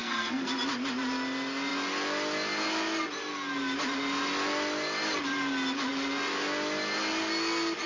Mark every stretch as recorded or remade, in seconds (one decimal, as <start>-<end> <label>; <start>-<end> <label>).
0.0-0.5 remade; 0.5-7.9 recorded